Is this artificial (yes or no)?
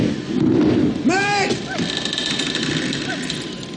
no